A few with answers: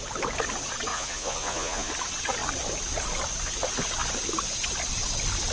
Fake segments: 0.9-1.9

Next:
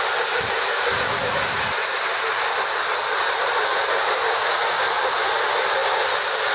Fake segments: none

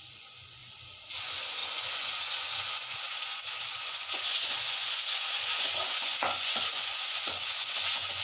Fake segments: 0.0-0.6; 1.2-8.2

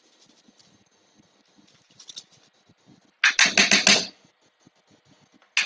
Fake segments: none

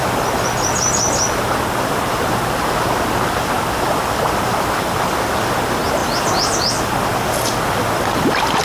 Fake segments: none